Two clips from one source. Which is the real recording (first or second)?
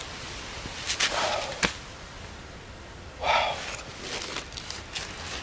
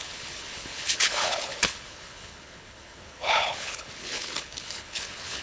first